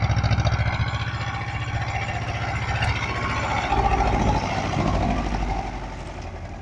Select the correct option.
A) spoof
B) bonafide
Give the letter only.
B